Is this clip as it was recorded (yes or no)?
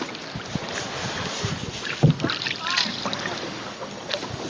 yes